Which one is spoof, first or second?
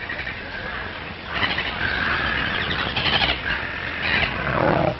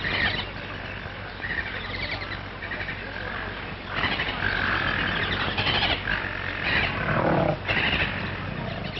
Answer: first